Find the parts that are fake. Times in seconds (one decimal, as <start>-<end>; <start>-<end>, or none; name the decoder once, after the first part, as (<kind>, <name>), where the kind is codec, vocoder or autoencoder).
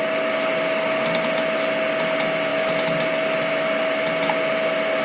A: none